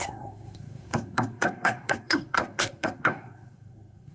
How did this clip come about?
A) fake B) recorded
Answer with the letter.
A